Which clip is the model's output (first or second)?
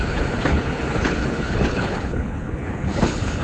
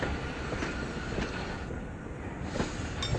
first